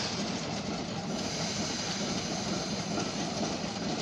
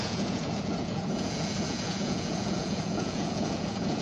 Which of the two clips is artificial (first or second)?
second